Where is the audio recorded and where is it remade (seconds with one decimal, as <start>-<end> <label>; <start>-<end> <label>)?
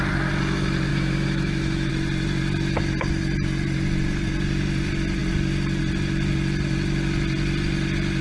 0.0-0.9 recorded; 0.9-1.9 remade; 1.9-8.2 recorded